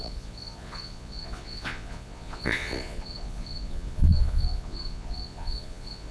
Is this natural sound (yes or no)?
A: no